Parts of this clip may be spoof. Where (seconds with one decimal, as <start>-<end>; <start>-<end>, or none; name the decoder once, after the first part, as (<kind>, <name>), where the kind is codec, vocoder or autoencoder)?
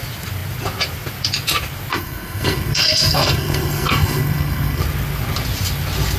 1.9-4.8 (codec, SNAC)